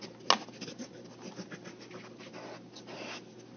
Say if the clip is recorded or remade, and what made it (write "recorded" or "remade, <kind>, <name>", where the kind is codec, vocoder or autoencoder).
recorded